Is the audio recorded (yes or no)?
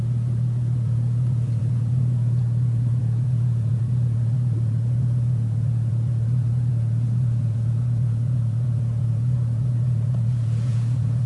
no